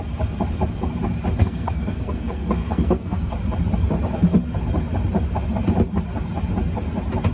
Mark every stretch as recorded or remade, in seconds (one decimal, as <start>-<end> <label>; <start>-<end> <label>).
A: 0.0-1.4 recorded; 1.4-3.3 remade; 3.3-7.3 recorded